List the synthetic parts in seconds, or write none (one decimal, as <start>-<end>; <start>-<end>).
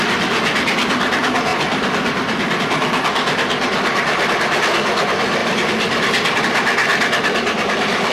5.4-6.4; 6.9-8.1